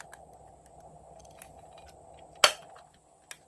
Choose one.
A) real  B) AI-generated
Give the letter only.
A